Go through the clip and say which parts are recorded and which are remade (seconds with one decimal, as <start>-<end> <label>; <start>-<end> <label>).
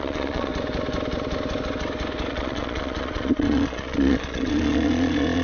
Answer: 0.0-0.5 remade; 0.5-2.3 recorded; 2.3-5.4 remade